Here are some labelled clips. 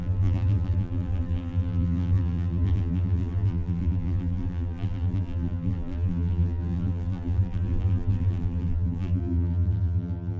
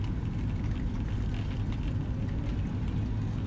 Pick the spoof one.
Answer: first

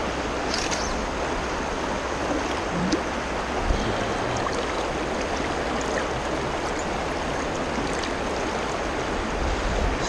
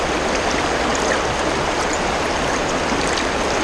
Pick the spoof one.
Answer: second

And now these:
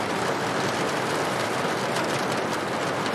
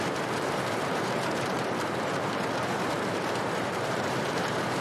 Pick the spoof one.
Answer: second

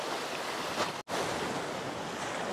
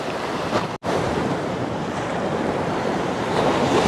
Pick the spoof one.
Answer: second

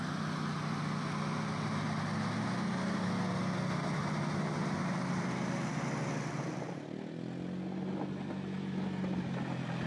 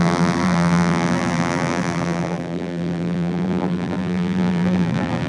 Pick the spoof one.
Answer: second